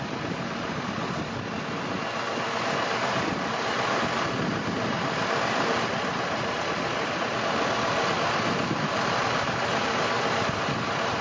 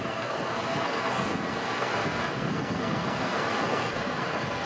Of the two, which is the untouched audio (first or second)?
first